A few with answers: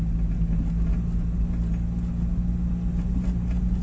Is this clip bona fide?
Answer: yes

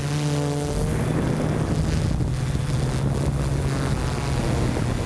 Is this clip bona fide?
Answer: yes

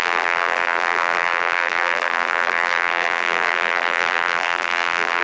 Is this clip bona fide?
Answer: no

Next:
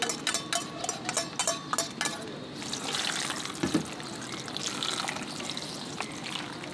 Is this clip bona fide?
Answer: yes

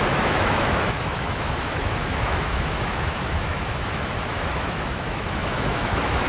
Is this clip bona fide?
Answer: no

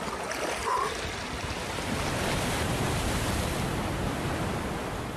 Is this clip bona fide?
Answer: yes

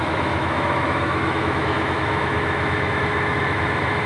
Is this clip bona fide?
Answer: no